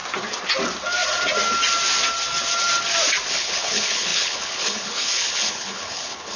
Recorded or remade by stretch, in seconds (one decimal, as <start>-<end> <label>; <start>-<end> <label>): 0.0-3.3 recorded; 3.3-6.4 remade